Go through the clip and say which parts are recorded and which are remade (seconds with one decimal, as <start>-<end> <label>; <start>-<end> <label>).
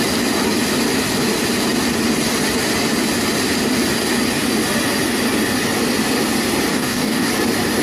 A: 0.0-6.7 recorded; 6.7-7.3 remade; 7.3-7.8 recorded